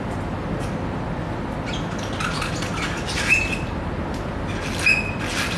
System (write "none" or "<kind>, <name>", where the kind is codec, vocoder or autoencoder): none